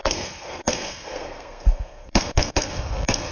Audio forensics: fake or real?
fake